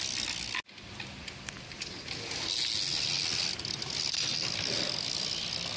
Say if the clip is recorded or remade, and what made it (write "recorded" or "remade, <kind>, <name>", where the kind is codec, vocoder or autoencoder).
recorded